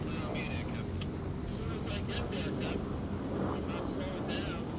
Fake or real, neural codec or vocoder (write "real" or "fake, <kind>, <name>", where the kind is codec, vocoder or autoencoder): real